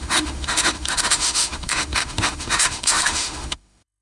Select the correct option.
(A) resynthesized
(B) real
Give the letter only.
A